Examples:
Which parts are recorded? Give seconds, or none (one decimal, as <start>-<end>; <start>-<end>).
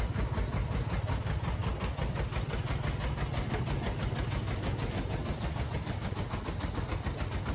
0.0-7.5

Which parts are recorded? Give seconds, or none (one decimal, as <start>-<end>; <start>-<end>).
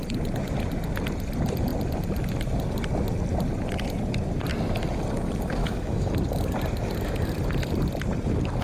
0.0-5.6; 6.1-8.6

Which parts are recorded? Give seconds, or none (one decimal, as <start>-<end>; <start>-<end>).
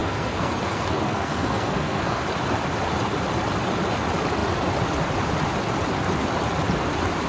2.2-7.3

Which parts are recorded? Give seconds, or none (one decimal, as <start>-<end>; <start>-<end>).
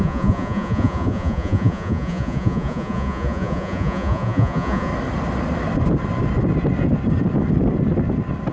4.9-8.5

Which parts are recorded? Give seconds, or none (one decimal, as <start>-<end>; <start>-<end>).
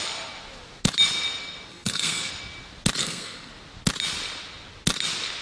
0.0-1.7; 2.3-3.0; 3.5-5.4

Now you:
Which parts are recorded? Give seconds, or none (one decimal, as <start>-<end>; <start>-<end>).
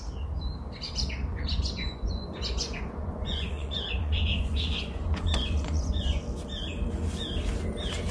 0.0-1.3; 6.2-8.1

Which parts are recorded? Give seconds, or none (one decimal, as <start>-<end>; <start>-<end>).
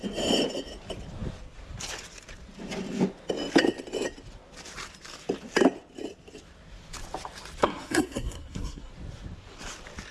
0.0-7.6; 8.9-10.1